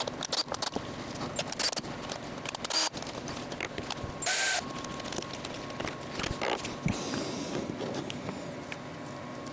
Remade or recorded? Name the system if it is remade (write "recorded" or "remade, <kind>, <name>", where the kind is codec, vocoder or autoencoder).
recorded